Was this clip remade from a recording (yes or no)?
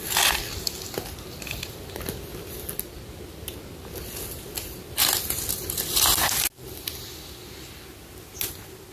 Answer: no